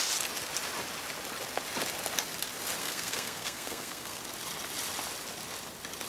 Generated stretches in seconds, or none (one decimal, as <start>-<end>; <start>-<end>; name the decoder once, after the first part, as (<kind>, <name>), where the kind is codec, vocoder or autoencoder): 2.8-4.2 (codec, SNAC)